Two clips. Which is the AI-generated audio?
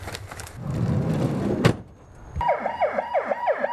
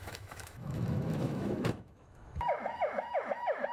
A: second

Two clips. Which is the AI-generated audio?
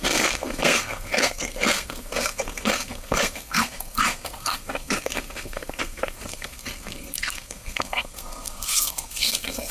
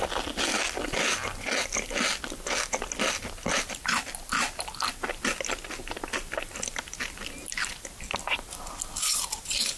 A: first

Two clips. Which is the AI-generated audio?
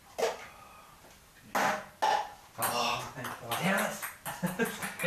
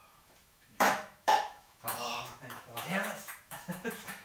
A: second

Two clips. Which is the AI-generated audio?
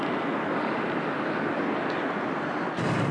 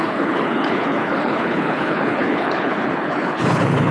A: second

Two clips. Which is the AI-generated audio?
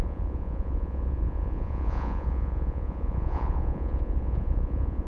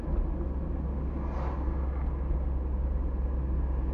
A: first